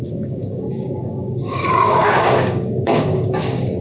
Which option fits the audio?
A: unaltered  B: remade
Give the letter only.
B